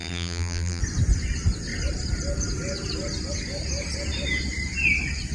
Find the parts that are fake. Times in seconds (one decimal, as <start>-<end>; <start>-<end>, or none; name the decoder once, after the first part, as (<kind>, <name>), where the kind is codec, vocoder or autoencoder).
0.0-0.8 (vocoder, BigVGAN v2)